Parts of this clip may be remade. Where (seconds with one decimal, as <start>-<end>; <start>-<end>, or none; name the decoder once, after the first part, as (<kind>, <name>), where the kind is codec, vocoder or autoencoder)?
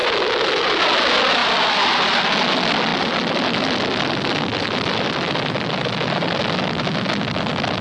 0.0-0.8 (vocoder, BigVGAN v2); 1.4-2.3; 2.9-3.4; 4.5-6.4